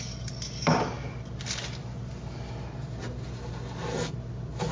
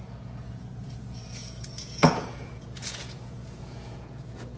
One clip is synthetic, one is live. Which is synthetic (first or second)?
second